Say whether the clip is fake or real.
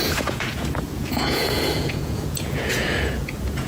fake